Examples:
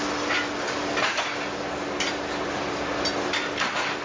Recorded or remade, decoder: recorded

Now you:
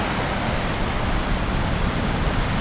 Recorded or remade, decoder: recorded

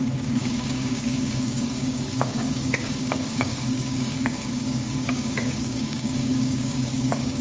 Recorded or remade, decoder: remade, codec, DAC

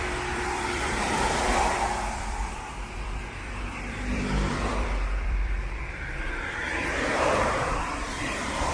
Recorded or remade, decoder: remade, vocoder, BigVGAN v2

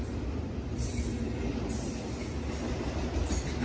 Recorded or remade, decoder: recorded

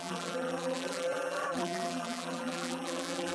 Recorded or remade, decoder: remade, vocoder, BigVGAN v2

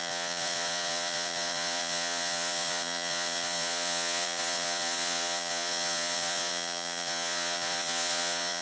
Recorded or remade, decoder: remade, vocoder, Vocos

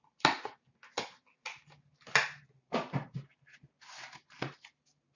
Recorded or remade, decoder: recorded